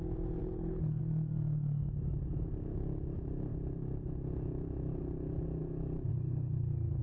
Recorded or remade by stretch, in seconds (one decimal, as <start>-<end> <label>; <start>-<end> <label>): 0.0-0.4 recorded; 0.4-1.0 remade; 1.0-6.1 recorded; 6.1-7.0 remade